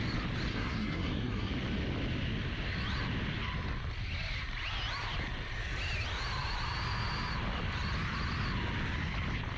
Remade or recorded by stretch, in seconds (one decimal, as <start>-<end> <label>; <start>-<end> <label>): 0.0-0.5 recorded; 0.5-1.5 remade; 1.5-9.6 recorded